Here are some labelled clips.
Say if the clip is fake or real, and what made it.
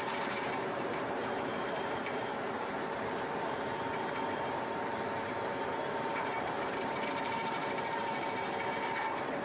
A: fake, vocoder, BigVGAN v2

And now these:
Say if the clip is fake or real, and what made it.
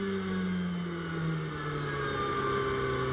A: real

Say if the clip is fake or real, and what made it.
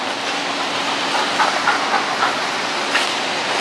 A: fake, vocoder, BigVGAN v2